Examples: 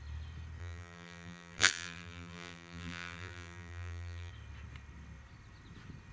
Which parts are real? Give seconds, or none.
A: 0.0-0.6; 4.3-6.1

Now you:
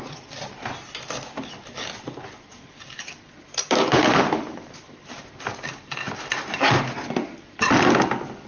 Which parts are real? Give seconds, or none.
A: 0.0-2.5; 5.1-8.5

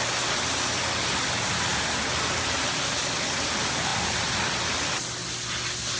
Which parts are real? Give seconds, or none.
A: 0.0-6.0

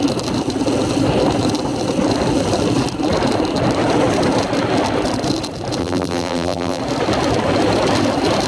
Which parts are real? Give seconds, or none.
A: 0.0-5.8; 6.8-8.5

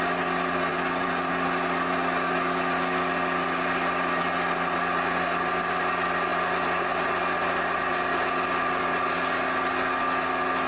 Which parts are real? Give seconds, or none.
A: 0.0-0.7; 1.3-10.7